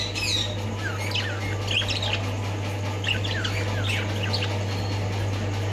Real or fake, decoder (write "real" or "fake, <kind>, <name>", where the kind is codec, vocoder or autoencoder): real